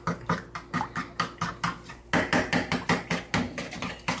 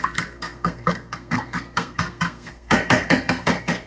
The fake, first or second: second